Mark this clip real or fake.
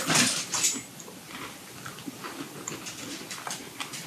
fake